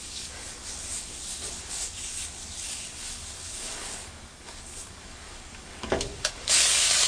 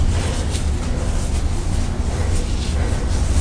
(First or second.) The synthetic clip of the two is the first